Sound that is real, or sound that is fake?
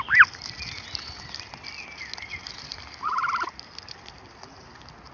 real